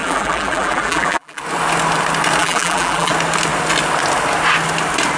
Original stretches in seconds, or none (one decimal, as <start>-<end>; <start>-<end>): 1.4-2.4; 3.1-5.2